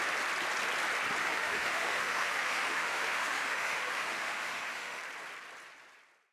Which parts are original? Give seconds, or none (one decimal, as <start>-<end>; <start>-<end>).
0.0-1.2; 5.0-6.3